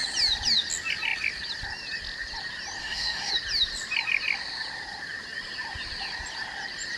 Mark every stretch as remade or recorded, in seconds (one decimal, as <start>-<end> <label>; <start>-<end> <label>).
0.0-2.8 recorded; 2.8-3.3 remade; 3.3-7.0 recorded